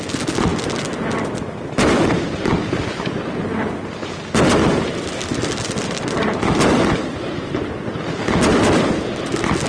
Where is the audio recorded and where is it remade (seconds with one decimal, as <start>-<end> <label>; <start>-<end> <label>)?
0.0-0.5 recorded; 0.5-2.8 remade; 2.8-3.5 recorded; 3.5-7.9 remade; 7.9-9.7 recorded